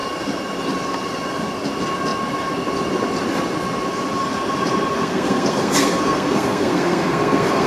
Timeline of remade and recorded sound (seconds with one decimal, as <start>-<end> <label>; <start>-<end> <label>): 0.0-4.9 recorded; 4.9-7.7 remade